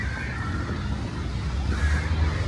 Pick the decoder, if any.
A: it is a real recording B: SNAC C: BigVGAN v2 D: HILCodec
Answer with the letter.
A